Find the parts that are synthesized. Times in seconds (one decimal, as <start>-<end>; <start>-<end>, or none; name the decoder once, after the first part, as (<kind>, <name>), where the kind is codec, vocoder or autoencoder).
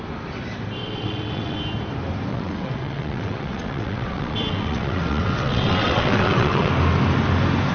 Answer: 0.8-1.6 (vocoder, WaveNeXt); 2.3-6.7